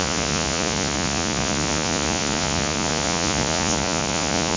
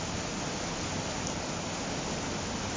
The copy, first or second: first